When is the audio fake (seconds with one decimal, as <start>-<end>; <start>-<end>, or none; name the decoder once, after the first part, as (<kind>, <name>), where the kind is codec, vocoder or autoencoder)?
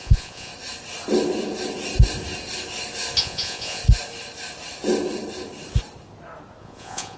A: 0.0-0.5 (vocoder, Vocos); 3.2-3.8; 6.6-7.2